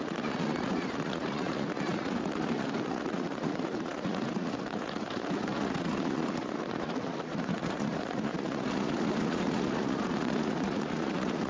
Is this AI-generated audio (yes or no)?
yes